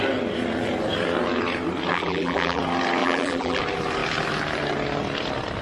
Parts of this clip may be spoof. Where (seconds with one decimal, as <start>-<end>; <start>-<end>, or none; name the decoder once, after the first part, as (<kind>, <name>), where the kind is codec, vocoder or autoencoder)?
1.9-2.6 (vocoder, BigVGAN v2); 3.0-3.6

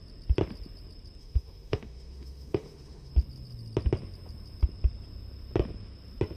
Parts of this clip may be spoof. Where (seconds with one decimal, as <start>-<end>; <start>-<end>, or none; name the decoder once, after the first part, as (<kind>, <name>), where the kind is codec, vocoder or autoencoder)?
1.2-3.1 (autoencoder, DAC-VAE)